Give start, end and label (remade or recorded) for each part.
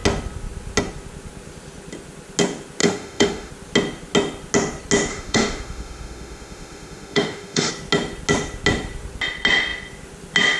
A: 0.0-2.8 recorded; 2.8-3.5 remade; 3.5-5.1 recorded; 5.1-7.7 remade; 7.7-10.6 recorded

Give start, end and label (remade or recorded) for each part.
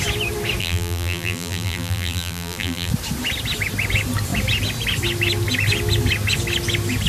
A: 0.0-0.6 recorded; 0.6-2.9 remade; 2.9-7.1 recorded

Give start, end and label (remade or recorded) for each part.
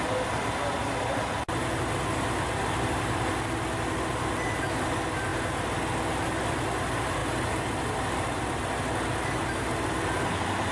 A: 0.0-10.7 recorded